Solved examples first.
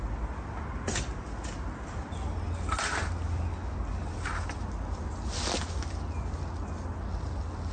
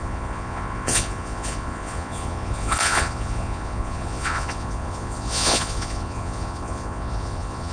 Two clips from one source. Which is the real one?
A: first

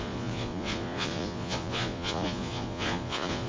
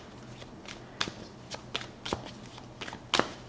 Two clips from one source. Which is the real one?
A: second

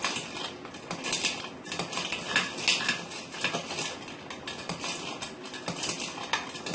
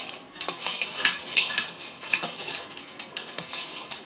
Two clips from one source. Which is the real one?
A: first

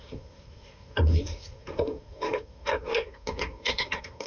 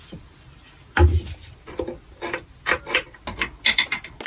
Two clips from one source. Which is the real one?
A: second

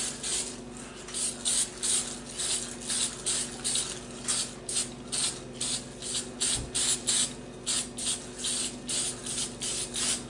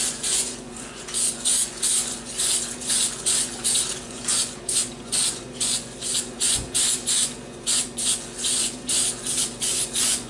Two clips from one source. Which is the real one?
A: first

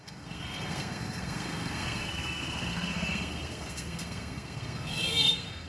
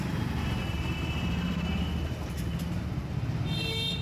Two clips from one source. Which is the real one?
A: second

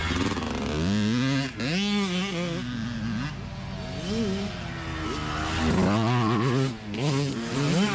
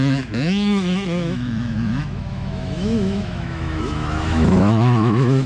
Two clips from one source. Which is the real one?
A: first